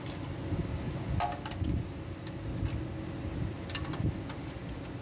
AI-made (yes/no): no